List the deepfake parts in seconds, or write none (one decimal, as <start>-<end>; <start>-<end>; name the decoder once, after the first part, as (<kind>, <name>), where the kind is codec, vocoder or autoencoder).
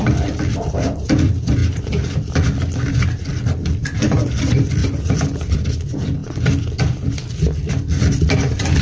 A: 0.0-1.6 (vocoder, BigVGAN v2); 2.9-4.8; 5.4-6.2; 7.3-8.8